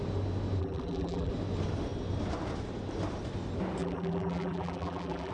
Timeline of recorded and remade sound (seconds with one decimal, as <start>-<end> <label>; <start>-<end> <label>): 0.0-0.6 recorded; 0.6-1.3 remade; 1.3-3.8 recorded; 3.8-5.3 remade